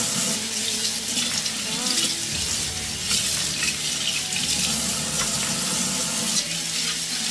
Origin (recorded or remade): recorded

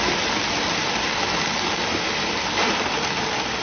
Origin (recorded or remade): recorded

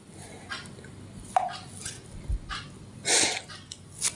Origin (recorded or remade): recorded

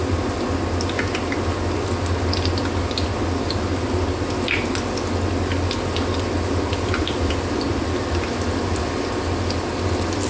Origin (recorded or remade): recorded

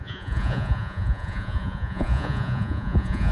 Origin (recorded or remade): remade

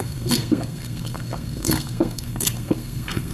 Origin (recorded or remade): remade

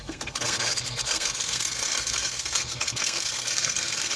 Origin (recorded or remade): remade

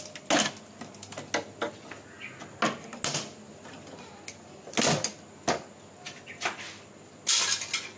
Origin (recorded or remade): recorded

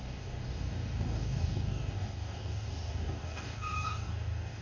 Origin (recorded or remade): remade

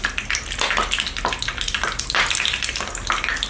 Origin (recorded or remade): recorded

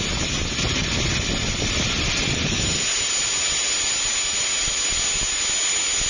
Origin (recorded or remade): recorded